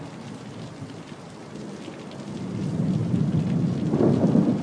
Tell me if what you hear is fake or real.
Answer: real